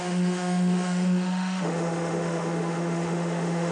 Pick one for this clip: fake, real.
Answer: fake